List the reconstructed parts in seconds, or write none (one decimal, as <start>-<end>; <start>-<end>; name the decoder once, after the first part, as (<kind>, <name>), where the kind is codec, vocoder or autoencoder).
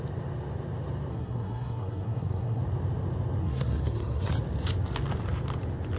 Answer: 1.1-2.6 (codec, SNAC); 3.4-4.3